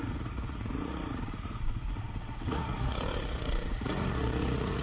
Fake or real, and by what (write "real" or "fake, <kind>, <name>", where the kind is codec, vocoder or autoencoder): fake, vocoder, Vocos